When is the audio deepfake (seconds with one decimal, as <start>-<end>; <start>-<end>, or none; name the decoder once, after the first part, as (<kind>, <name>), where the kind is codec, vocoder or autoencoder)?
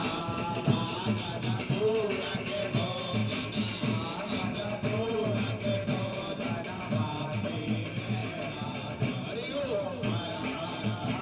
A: 0.0-11.2 (vocoder, BigVGAN v2)